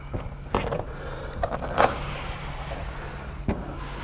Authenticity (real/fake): real